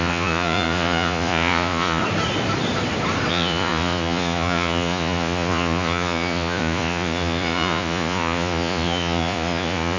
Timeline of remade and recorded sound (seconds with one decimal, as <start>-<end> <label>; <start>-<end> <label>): 0.0-2.0 remade; 2.0-3.3 recorded; 3.3-10.0 remade